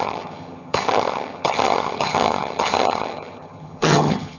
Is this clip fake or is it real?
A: fake